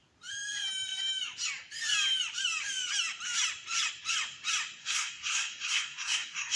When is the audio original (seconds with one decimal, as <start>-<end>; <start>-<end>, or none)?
0.0-4.8

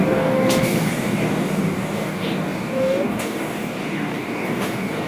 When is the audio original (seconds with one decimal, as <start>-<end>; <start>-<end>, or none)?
none

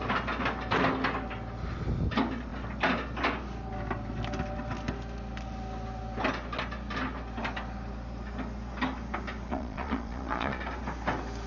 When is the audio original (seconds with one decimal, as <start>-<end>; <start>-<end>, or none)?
0.0-9.5; 10.6-11.5

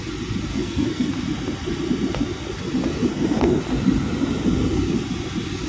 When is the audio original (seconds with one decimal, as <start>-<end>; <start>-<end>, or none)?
0.0-0.5; 1.1-3.1; 3.6-5.7

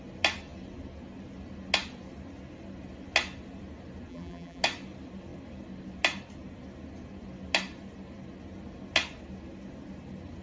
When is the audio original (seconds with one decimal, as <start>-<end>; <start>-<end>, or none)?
0.0-4.1; 4.6-10.4